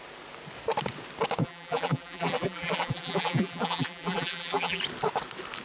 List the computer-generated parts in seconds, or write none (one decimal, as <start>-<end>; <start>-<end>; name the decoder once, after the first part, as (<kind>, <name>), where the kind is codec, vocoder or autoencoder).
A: 1.4-4.8 (vocoder, BigVGAN v2)